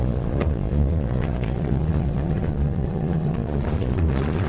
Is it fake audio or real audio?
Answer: fake